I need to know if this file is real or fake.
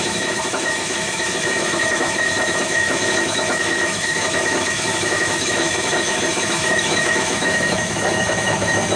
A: fake